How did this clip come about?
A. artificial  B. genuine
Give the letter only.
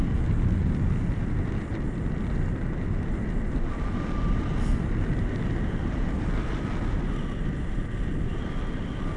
B